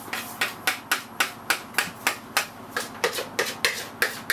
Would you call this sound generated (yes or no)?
no